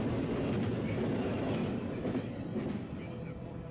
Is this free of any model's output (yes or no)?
yes